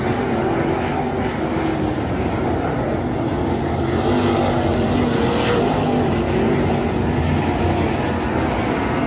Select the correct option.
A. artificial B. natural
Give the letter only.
B